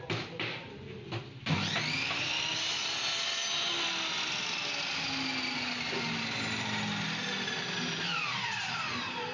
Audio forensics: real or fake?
real